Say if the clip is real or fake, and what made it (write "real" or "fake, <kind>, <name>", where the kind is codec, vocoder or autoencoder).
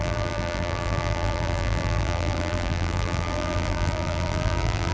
fake, vocoder, BigVGAN v2